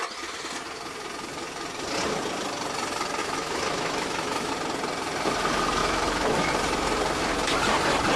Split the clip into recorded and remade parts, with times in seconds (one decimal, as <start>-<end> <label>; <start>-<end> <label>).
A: 0.0-3.2 recorded; 3.2-4.5 remade; 4.5-5.8 recorded; 5.8-6.5 remade; 6.5-8.2 recorded

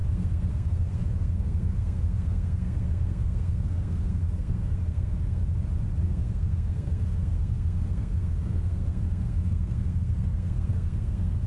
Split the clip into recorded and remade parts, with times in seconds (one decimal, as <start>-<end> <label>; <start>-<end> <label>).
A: 0.0-5.4 remade; 5.4-6.0 recorded; 6.0-11.5 remade

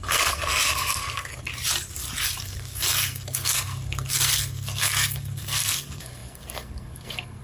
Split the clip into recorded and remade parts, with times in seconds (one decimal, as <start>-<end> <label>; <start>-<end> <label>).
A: 0.0-1.5 remade; 1.5-2.4 recorded; 2.4-7.4 remade

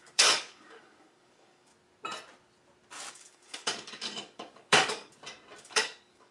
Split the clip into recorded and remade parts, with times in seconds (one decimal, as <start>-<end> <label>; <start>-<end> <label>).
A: 0.0-1.7 remade; 1.7-3.1 recorded; 3.1-5.1 remade; 5.1-5.6 recorded; 5.6-6.3 remade

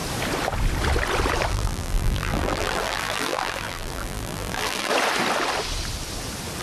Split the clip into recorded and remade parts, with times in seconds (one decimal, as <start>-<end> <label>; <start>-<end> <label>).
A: 0.0-1.5 recorded; 1.5-4.9 remade; 4.9-6.6 recorded

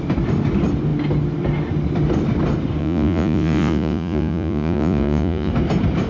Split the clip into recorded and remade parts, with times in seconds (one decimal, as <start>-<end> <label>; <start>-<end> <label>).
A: 0.0-2.8 recorded; 2.8-5.5 remade; 5.5-6.1 recorded

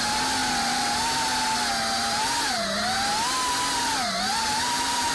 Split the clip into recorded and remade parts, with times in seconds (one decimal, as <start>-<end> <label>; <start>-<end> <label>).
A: 0.0-4.3 recorded; 4.3-5.1 remade